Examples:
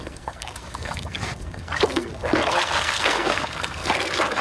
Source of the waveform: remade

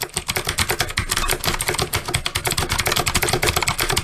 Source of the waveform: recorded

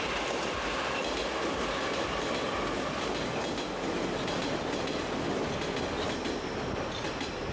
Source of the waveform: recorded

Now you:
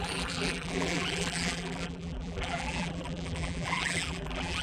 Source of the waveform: remade